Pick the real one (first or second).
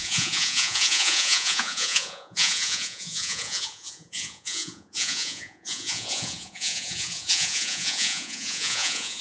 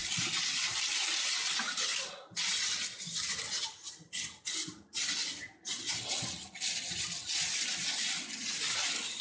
second